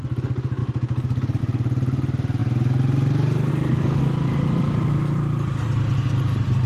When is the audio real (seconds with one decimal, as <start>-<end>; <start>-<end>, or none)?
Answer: 0.0-6.7